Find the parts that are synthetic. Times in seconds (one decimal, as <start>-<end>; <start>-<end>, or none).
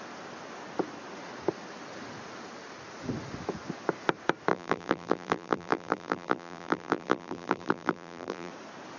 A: 4.5-8.5